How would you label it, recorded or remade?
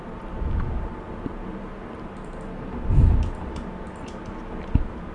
recorded